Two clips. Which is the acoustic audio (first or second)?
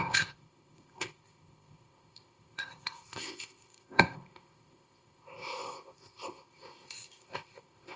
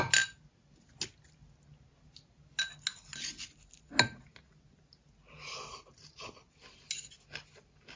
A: second